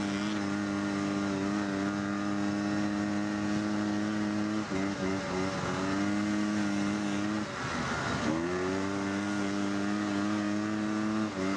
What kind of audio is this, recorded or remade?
recorded